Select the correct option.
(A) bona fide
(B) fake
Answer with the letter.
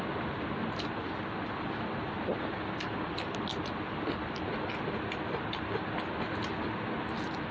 A